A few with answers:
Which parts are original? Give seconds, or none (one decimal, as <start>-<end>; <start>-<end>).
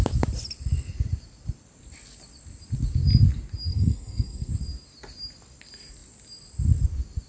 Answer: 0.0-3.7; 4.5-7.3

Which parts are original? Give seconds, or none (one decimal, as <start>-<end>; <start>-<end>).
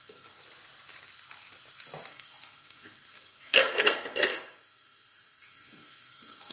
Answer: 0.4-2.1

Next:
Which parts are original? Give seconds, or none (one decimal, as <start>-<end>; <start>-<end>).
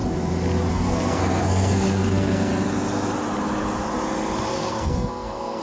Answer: 0.0-0.7; 2.5-4.5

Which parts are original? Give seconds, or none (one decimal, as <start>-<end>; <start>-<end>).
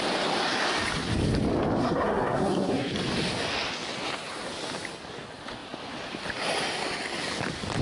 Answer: 0.0-1.8; 2.9-7.8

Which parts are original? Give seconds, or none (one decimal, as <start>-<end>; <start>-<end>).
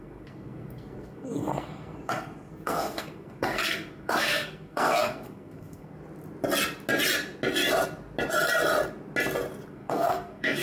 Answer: 6.0-9.7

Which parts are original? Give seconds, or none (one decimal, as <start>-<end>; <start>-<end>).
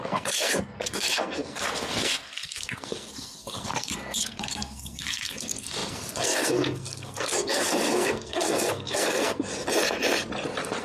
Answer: 9.5-10.8